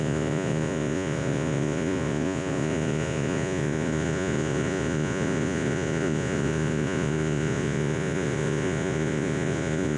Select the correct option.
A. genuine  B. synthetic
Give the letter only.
B